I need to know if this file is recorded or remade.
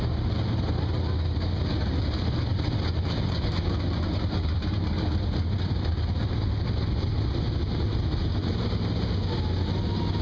recorded